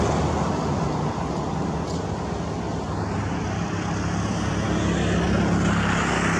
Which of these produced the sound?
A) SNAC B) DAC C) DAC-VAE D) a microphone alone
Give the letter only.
D